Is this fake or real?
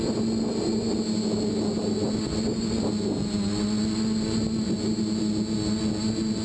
real